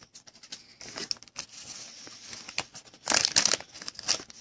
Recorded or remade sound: recorded